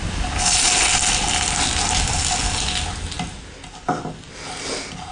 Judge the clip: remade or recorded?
recorded